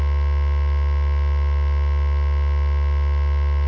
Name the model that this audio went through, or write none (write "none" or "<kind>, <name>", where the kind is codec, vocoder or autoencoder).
none